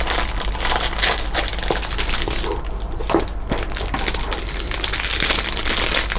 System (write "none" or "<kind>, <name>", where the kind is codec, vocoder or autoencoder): none